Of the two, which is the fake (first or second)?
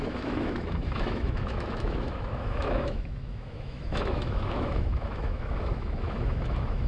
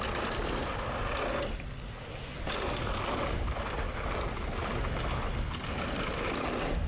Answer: first